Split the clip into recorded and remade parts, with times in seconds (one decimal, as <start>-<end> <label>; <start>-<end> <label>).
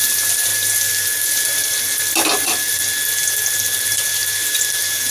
0.0-0.5 remade; 0.5-3.6 recorded; 3.6-5.1 remade